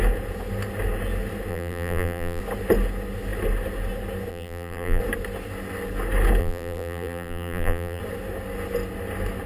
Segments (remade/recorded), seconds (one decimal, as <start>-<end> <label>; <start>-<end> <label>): 0.0-1.5 recorded; 1.5-2.4 remade; 2.4-4.3 recorded; 4.3-5.0 remade; 5.0-6.4 recorded; 6.4-8.0 remade; 8.0-9.5 recorded